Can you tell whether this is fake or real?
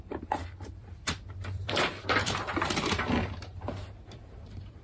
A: fake